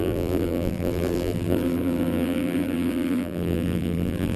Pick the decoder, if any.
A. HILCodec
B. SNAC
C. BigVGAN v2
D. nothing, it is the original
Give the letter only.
C